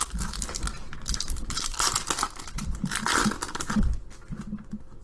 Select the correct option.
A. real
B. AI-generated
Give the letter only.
A